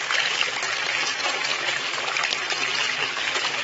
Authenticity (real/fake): fake